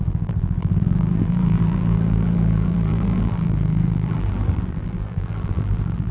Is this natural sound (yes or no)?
no